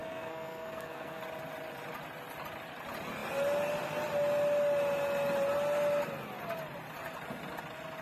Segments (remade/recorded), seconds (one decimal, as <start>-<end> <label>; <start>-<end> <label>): 0.0-1.2 remade; 1.2-8.0 recorded